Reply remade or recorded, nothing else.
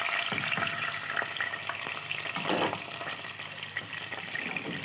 recorded